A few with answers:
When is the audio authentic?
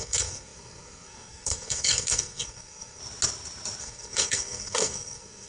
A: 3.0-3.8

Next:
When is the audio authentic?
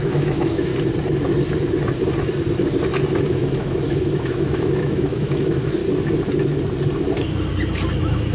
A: 0.7-3.3; 5.8-7.9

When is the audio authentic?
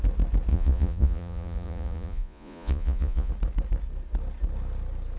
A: 0.0-0.5; 3.3-5.2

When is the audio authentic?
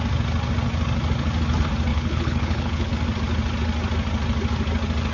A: 0.0-1.9; 2.9-5.1